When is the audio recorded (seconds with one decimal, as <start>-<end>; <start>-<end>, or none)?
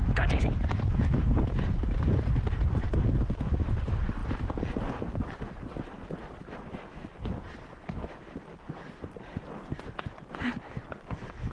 0.0-0.7